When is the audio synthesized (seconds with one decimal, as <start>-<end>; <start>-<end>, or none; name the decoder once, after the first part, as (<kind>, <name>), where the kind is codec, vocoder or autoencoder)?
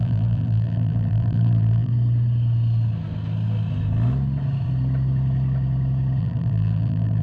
0.0-1.9 (vocoder, BigVGAN v2); 6.2-7.2